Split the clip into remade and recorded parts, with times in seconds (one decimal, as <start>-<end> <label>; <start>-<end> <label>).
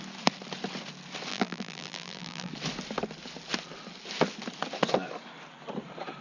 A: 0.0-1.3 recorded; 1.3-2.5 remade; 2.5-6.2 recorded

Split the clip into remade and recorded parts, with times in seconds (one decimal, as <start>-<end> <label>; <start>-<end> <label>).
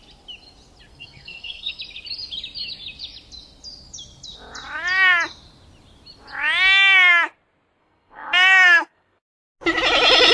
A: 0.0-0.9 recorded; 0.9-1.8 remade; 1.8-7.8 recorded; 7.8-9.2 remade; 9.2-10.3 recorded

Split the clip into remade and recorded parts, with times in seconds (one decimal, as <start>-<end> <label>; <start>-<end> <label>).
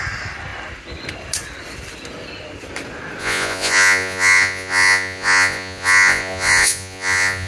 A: 0.0-3.2 recorded; 3.2-7.5 remade